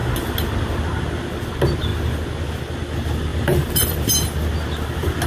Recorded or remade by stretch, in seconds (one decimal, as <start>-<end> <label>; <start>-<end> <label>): 0.0-3.3 recorded; 3.3-4.1 remade; 4.1-5.3 recorded

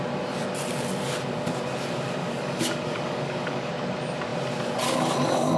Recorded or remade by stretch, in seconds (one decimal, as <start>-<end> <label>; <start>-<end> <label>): 0.0-2.2 recorded; 2.2-3.7 remade; 3.7-5.6 recorded

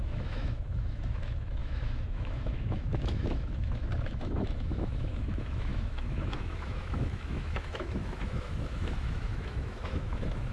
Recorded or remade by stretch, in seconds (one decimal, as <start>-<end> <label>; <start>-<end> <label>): 0.0-10.5 remade

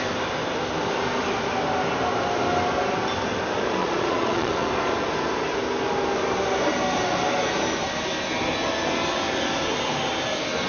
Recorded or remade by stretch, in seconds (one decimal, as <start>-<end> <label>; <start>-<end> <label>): 0.0-3.8 recorded; 3.8-4.7 remade; 4.7-10.7 recorded

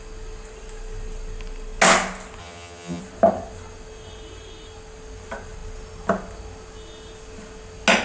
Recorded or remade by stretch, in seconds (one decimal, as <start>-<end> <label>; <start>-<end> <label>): 0.0-2.4 recorded; 2.4-3.0 remade; 3.0-8.0 recorded

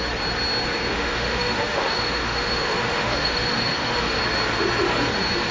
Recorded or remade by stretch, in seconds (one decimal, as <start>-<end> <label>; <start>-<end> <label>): 0.0-0.9 recorded; 0.9-4.2 remade; 4.2-5.5 recorded